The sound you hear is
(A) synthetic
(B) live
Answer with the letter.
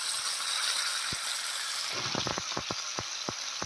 B